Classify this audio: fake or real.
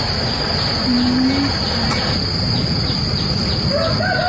real